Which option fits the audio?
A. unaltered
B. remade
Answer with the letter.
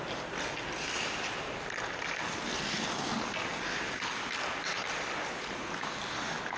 A